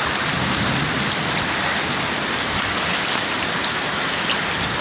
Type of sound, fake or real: real